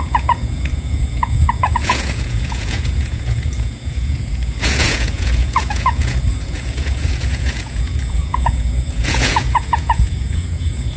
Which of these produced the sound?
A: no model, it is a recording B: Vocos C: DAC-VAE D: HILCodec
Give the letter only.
B